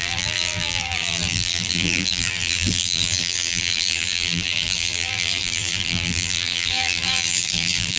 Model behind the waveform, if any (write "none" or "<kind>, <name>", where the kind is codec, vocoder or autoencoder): vocoder, BigVGAN v2